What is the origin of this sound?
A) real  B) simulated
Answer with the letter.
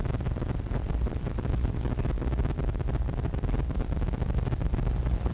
A